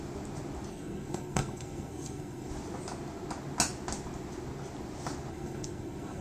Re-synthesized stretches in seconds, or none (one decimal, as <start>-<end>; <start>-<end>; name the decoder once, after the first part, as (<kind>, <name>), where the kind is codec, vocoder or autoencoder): 0.7-2.5 (codec, SNAC); 5.3-6.2